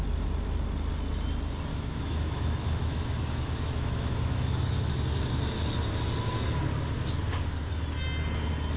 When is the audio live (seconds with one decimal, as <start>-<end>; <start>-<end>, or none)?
0.0-1.7; 4.9-8.8